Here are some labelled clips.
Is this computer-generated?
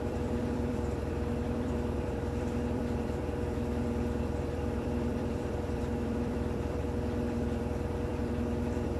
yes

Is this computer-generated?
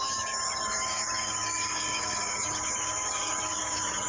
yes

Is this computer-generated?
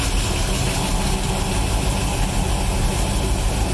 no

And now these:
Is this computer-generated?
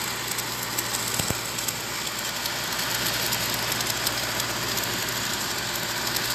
no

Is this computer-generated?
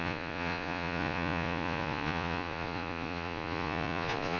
yes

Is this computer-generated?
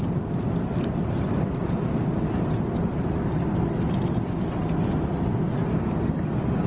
no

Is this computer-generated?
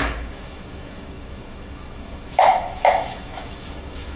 yes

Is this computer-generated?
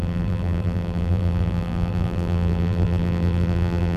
yes